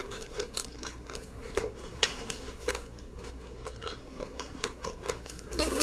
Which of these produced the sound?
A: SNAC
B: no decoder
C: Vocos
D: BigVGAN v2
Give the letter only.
A